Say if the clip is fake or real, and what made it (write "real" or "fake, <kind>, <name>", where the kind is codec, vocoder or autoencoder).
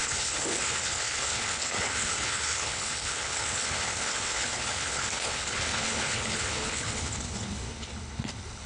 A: fake, codec, HILCodec